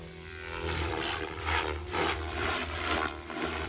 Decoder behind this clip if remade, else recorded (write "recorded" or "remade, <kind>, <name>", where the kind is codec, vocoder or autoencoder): remade, vocoder, BigVGAN v2